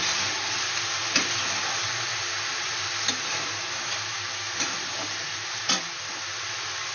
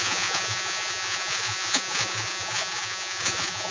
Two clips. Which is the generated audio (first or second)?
second